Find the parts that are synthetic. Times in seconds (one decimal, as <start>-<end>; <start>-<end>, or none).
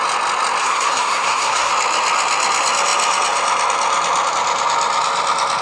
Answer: 0.6-1.7